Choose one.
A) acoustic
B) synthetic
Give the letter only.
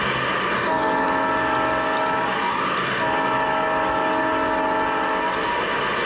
A